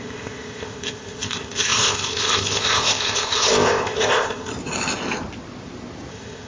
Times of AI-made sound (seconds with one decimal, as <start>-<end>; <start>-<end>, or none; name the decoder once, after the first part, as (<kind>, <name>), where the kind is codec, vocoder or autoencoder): 0.0-4.5 (codec, ZipCodec); 6.1-6.5